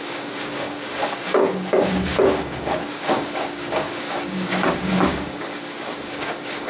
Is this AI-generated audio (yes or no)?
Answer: yes